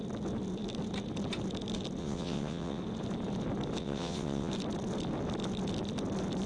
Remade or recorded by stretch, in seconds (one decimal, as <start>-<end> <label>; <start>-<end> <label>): 0.0-2.0 recorded; 2.0-2.8 remade; 2.8-3.8 recorded; 3.8-4.5 remade; 4.5-6.5 recorded